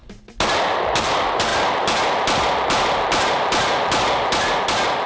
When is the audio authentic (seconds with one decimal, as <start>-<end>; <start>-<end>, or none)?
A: 0.0-5.1